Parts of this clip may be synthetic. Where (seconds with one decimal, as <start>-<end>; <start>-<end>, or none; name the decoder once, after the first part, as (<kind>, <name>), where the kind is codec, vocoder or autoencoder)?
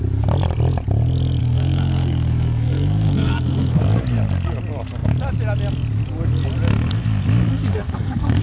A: 1.4-3.8 (codec, SNAC); 7.7-8.4